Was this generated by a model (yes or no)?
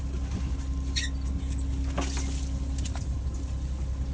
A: no